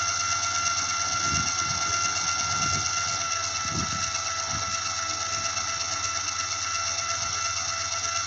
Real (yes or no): yes